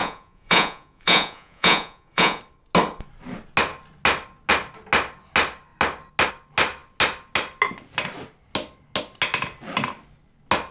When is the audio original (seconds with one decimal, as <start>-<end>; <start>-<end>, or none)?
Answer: 2.4-10.7